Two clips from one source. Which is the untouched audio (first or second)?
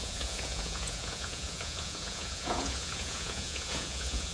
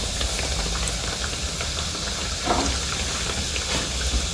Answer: second